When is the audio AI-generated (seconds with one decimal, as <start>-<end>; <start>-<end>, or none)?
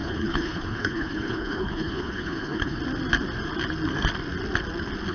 0.0-2.8